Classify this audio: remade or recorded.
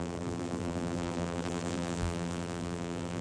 remade